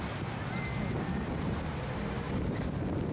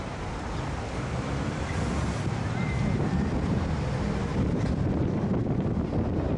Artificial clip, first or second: second